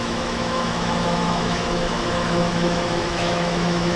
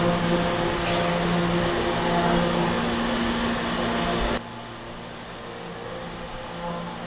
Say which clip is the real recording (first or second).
second